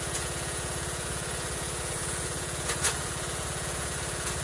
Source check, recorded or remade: remade